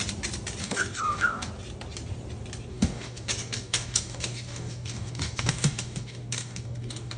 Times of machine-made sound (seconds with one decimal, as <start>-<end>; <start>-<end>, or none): 0.6-1.5; 2.7-7.2